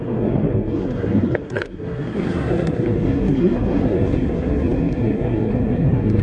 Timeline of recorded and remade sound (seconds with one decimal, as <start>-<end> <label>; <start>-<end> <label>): 0.0-6.2 remade